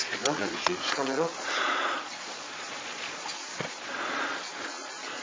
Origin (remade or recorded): remade